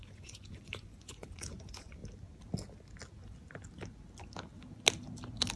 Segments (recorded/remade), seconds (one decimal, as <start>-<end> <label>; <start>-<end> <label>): 0.0-2.0 remade; 2.0-5.6 recorded